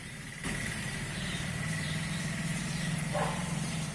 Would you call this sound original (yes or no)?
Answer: no